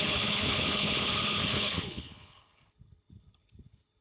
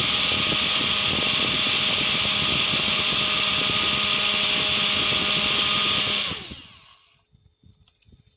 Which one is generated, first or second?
first